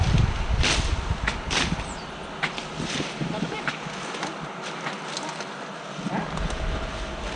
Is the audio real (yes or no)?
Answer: yes